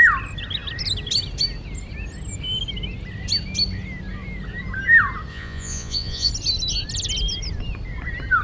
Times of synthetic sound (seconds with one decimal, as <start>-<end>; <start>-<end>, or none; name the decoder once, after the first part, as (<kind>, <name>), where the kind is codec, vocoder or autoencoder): 5.3-6.3 (vocoder, Vocos)